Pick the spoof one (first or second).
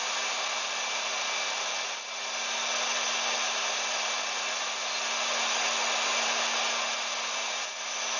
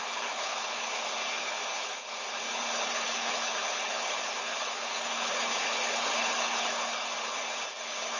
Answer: second